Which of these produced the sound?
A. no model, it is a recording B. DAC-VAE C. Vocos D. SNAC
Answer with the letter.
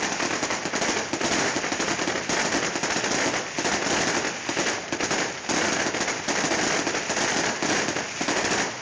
A